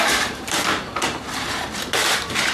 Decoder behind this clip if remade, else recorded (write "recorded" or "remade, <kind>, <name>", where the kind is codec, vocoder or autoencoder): remade, vocoder, BigVGAN v2